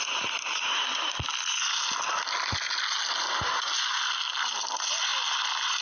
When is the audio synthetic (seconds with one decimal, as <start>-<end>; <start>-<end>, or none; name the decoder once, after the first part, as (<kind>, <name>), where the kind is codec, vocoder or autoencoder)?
none